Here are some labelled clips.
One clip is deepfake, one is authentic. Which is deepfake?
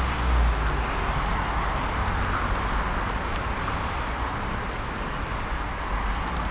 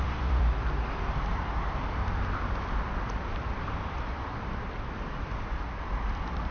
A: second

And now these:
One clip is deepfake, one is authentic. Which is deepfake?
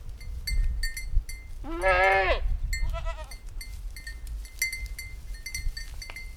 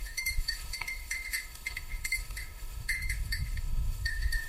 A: second